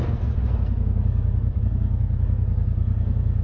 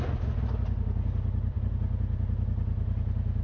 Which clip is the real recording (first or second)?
second